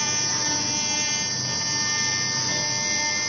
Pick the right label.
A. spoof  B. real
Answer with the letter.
B